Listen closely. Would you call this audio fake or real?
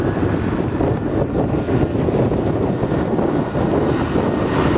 real